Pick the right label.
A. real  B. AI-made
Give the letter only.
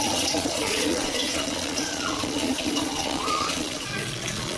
B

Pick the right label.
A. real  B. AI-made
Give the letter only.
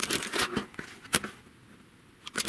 A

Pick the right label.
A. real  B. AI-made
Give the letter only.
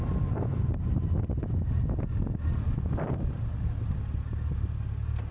A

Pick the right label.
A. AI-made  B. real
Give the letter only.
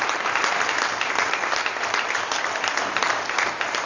B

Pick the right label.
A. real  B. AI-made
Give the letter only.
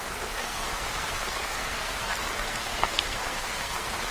B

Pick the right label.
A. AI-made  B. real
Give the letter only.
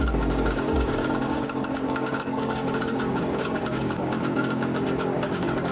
A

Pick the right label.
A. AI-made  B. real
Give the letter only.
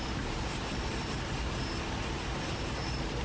B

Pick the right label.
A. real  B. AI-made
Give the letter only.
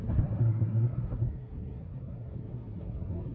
B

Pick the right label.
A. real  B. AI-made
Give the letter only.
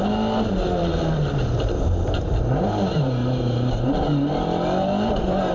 B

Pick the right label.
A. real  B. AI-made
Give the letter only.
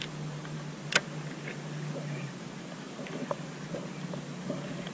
A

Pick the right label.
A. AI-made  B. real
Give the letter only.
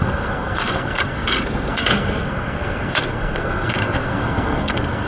A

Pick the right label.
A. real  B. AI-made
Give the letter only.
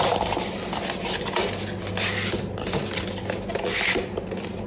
A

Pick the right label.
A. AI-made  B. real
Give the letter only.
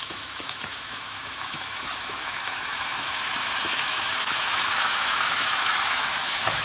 A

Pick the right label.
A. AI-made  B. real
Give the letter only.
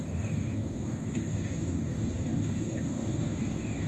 A